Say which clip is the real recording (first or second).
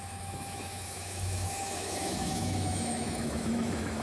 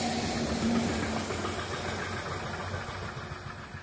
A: second